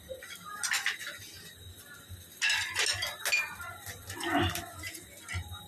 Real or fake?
real